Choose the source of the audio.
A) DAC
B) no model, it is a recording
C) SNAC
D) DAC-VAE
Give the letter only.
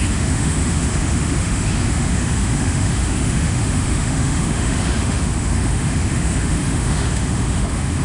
D